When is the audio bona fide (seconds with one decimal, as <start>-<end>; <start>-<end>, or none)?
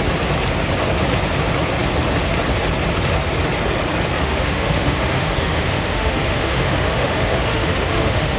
0.0-4.2